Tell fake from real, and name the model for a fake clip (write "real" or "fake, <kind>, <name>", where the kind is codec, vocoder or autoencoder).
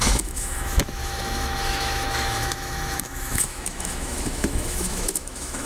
fake, autoencoder, DAC-VAE